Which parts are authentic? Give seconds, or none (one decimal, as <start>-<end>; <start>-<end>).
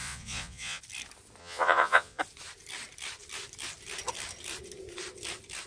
0.8-1.4; 2.2-5.7